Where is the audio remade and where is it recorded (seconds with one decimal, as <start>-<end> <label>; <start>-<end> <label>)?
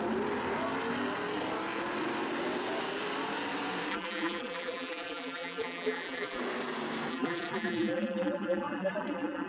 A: 0.0-3.9 recorded; 3.9-6.4 remade; 6.4-7.1 recorded; 7.1-9.5 remade